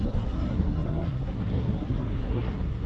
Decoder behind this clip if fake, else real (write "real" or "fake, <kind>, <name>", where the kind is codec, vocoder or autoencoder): fake, codec, SNAC